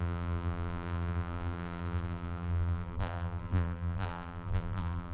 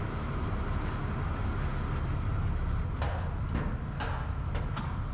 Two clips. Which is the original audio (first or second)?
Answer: second